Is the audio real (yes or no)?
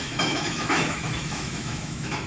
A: no